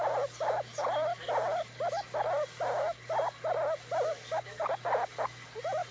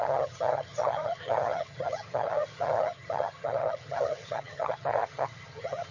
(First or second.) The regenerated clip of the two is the second